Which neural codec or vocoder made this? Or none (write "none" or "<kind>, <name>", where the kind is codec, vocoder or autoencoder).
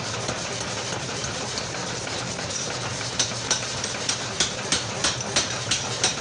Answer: vocoder, BigVGAN v2